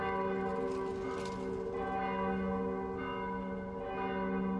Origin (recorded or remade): recorded